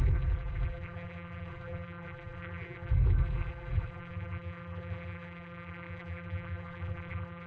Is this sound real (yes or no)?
no